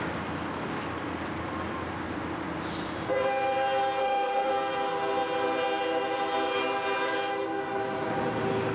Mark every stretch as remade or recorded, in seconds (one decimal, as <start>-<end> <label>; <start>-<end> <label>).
0.0-4.0 recorded; 4.0-4.5 remade; 4.5-8.7 recorded